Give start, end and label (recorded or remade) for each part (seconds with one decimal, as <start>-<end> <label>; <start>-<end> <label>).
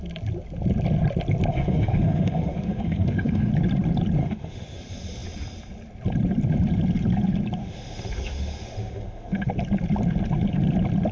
0.0-1.5 recorded; 1.5-3.5 remade; 3.5-4.2 recorded; 4.2-4.8 remade; 4.8-7.6 recorded; 7.6-9.5 remade; 9.5-11.1 recorded